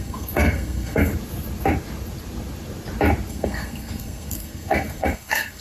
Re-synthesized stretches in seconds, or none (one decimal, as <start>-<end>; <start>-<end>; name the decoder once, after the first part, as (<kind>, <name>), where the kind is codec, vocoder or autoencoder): 0.0-1.1 (codec, SNAC); 3.3-5.6